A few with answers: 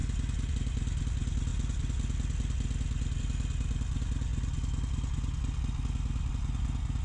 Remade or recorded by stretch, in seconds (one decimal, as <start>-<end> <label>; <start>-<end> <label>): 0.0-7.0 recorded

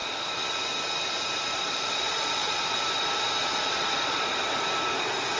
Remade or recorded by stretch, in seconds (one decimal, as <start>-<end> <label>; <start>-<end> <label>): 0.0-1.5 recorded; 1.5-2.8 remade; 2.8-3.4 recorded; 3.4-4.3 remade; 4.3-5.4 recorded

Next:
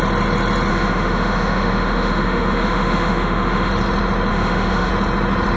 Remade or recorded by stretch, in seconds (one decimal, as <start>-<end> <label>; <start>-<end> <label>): 0.0-0.7 recorded; 0.7-3.7 remade; 3.7-4.3 recorded; 4.3-4.9 remade; 4.9-5.6 recorded

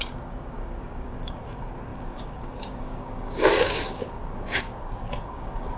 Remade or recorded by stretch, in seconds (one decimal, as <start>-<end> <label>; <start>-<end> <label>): 0.0-5.8 remade

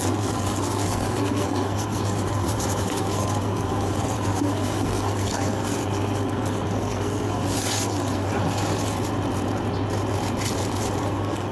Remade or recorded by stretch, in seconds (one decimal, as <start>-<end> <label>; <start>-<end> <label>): 0.0-8.3 remade; 8.3-11.0 recorded; 11.0-11.5 remade

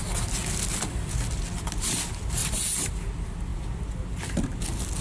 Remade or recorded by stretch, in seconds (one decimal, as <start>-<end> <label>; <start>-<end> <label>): 0.0-0.4 recorded; 0.4-1.4 remade; 1.4-2.4 recorded; 2.4-2.9 remade; 2.9-3.5 recorded; 3.5-5.0 remade